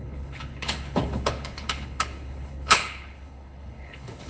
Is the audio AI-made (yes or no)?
yes